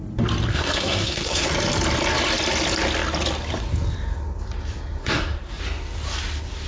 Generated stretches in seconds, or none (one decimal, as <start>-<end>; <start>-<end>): 0.5-1.5; 5.0-5.6